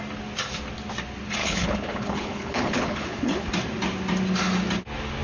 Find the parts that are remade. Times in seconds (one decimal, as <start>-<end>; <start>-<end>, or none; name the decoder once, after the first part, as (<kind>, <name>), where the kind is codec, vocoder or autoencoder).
1.4-3.5 (codec, HILCodec)